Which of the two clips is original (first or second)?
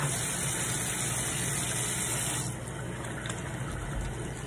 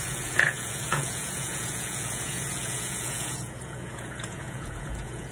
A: first